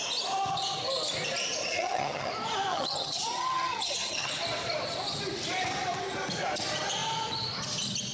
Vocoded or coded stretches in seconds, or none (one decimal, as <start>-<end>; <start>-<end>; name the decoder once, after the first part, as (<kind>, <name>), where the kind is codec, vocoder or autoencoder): 1.6-2.3 (vocoder, HiFi-GAN); 2.7-4.3